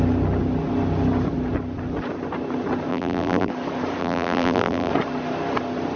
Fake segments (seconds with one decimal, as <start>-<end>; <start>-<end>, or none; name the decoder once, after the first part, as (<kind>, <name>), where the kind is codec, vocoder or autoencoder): 2.9-3.5 (vocoder, BigVGAN v2); 4.0-4.9